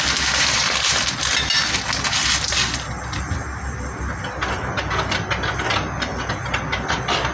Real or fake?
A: real